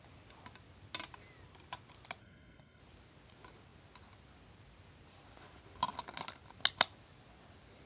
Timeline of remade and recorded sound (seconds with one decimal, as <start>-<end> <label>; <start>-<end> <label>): 0.0-2.2 recorded; 2.2-2.8 remade; 2.8-7.9 recorded